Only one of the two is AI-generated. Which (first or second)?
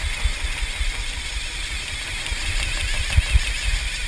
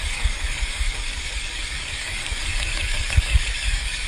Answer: second